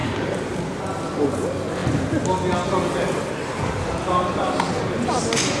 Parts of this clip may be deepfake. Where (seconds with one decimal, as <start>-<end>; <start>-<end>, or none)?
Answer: 0.0-0.5